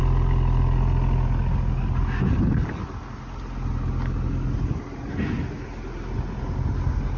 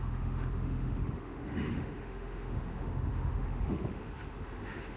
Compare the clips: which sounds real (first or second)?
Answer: first